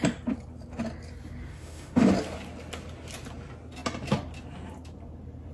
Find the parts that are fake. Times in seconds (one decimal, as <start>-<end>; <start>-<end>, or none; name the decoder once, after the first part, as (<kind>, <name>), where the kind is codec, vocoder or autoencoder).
1.5-2.1 (autoencoder, DAC-VAE)